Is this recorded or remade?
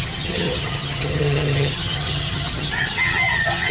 remade